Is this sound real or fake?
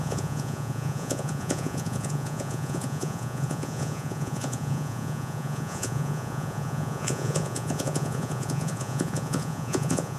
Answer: fake